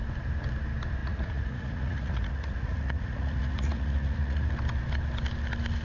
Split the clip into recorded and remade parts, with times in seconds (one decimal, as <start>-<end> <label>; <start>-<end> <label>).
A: 0.0-1.0 recorded; 1.0-4.5 remade; 4.5-5.8 recorded